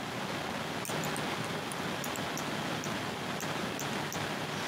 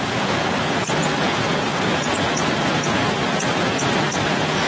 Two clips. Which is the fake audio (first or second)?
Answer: second